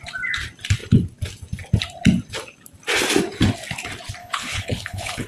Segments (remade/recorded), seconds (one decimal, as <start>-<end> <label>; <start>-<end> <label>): 0.0-4.2 recorded; 4.2-5.3 remade